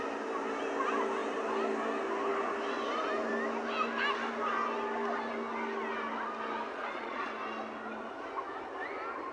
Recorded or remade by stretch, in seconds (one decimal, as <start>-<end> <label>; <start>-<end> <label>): 0.0-6.7 recorded; 6.7-7.3 remade; 7.3-9.3 recorded